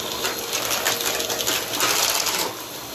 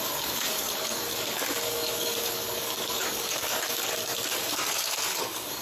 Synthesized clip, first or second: second